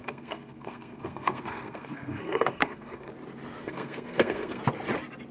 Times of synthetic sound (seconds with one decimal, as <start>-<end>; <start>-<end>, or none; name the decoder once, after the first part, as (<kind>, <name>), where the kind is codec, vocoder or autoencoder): 0.0-3.1 (codec, SNAC); 3.6-4.6